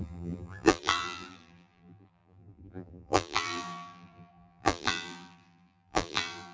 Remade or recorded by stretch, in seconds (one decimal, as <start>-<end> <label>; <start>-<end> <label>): 0.0-6.5 remade